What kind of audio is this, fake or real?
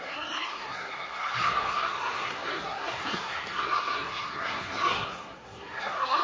fake